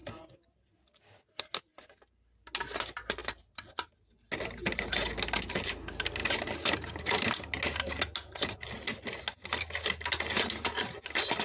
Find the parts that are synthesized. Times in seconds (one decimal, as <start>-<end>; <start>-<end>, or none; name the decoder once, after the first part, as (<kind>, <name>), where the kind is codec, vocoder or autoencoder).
none